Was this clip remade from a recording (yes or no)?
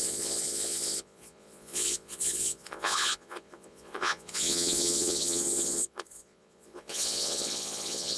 yes